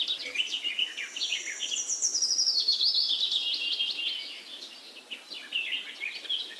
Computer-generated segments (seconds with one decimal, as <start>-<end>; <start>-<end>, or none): none